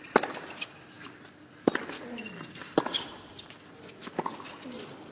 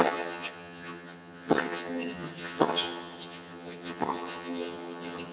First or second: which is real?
first